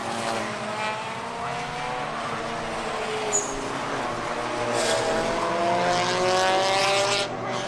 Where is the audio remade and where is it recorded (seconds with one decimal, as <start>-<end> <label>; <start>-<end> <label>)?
0.0-6.8 recorded; 6.8-7.7 remade